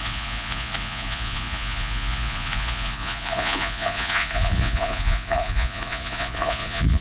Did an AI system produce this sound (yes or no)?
yes